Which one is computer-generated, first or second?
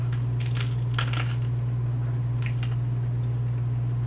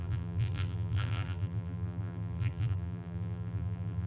second